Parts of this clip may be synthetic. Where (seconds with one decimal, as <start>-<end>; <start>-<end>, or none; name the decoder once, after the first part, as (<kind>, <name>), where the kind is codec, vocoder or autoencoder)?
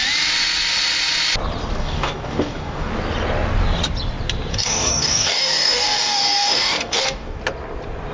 1.8-2.9 (codec, DAC); 4.5-7.4